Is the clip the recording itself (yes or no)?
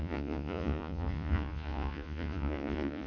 no